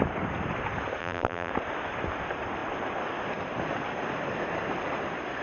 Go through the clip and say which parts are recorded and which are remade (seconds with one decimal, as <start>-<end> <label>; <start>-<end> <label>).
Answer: 0.0-1.0 recorded; 1.0-1.5 remade; 1.5-5.4 recorded